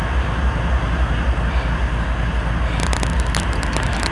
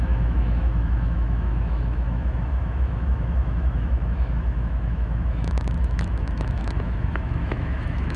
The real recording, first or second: first